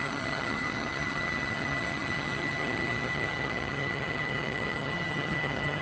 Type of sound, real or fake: fake